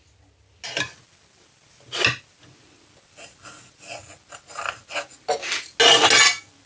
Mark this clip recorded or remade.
recorded